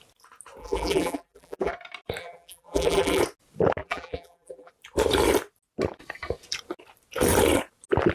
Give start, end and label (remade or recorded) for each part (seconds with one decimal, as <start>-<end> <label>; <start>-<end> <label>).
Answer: 0.0-0.6 recorded; 0.6-1.7 remade; 1.7-2.2 recorded; 2.2-3.2 remade; 3.2-3.8 recorded; 3.8-4.7 remade; 4.7-8.1 recorded